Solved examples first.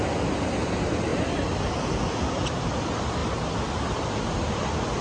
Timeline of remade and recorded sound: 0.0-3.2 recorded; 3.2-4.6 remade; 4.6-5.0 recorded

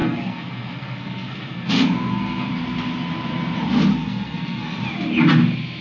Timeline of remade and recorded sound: 0.0-2.5 remade; 2.5-3.9 recorded; 3.9-4.8 remade; 4.8-5.8 recorded

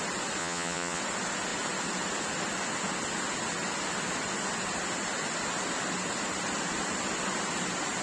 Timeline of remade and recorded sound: 0.0-0.4 recorded; 0.4-1.0 remade; 1.0-8.0 recorded